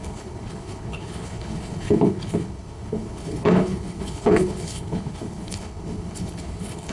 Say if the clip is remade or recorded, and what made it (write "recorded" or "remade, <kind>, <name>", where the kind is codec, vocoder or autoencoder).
remade, codec, HILCodec